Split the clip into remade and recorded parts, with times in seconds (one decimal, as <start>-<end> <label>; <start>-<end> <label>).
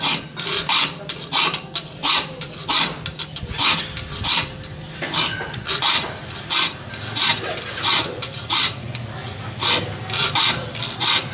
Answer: 0.0-11.3 recorded